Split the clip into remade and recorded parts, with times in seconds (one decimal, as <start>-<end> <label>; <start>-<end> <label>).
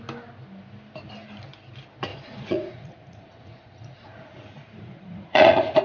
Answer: 0.0-2.1 recorded; 2.1-5.8 remade